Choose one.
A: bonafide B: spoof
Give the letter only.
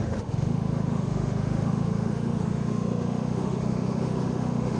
B